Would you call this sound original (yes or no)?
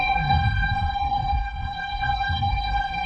no